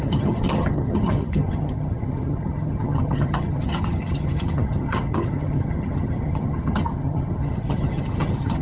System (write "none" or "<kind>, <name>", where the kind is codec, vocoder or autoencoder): vocoder, HiFi-GAN